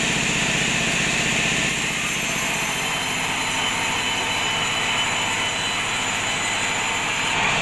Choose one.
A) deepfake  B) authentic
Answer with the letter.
B